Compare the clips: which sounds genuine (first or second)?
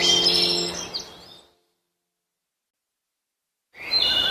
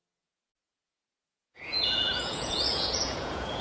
first